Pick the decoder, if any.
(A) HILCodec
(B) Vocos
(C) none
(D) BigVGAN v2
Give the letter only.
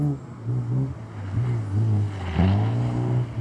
C